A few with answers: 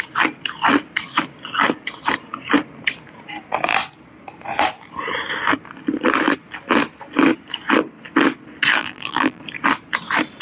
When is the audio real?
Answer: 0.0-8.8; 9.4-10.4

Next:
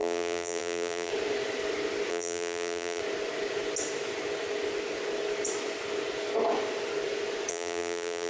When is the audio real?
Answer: 1.1-2.1; 3.0-7.5

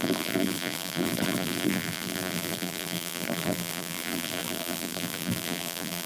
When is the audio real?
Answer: none

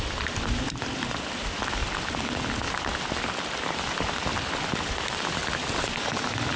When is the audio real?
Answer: 1.8-4.8; 5.4-6.1

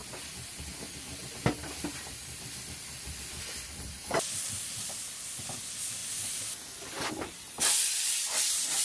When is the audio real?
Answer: 6.0-7.1

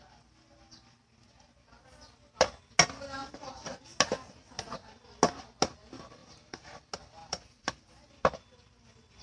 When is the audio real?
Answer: 0.0-3.2; 3.8-6.2; 6.8-7.2; 7.9-9.2